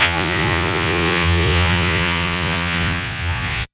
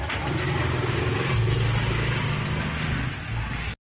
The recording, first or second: second